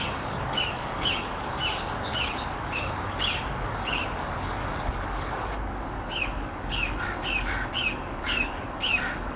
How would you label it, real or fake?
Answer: fake